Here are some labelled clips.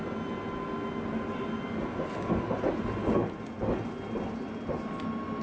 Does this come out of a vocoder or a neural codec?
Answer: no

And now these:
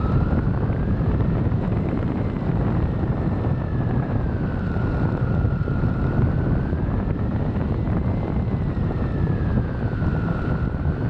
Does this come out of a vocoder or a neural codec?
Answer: yes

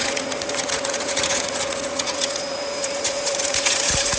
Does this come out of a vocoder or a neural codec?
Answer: yes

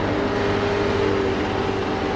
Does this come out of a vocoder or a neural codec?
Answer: no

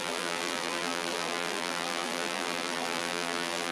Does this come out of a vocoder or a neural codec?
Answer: yes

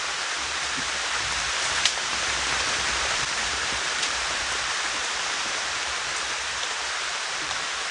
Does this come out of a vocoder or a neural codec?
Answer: yes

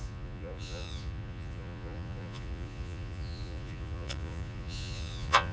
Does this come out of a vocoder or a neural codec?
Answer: yes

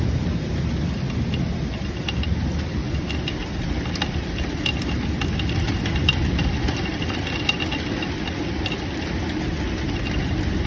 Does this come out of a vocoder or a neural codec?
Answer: no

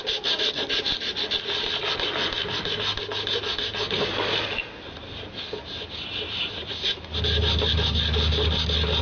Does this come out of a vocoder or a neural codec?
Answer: no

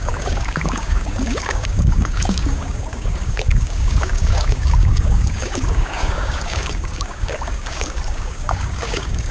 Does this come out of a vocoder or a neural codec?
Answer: yes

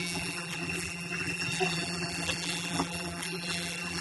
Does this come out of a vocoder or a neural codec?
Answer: yes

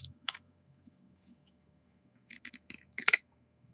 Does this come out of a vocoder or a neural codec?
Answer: yes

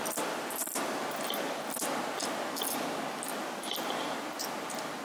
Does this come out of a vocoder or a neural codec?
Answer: no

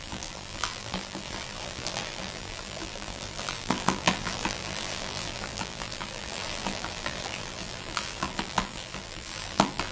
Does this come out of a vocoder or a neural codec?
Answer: yes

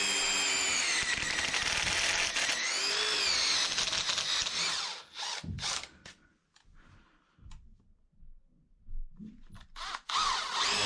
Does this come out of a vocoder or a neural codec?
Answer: no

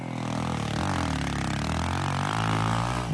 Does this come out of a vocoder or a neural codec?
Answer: no